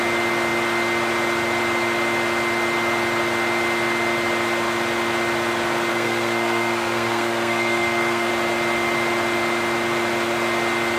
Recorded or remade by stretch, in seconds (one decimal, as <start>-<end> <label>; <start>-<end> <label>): 0.0-5.9 recorded; 5.9-8.3 remade; 8.3-11.0 recorded